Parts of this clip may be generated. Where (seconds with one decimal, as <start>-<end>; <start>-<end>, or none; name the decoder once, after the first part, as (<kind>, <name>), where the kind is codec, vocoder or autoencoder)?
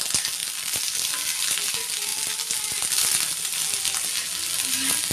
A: 0.4-1.7 (vocoder, BigVGAN v2); 2.1-2.9